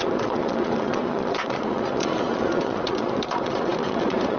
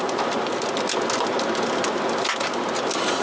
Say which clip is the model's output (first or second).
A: first